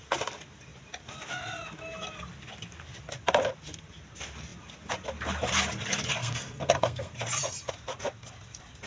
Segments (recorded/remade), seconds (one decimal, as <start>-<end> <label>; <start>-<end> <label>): 0.0-6.2 recorded; 6.2-7.1 remade; 7.1-8.9 recorded